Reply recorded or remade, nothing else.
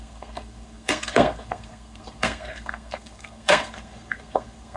remade